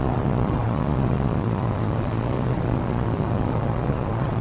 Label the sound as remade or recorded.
remade